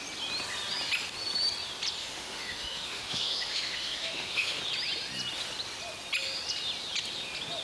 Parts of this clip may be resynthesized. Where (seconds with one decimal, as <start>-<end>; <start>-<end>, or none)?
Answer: 2.0-4.6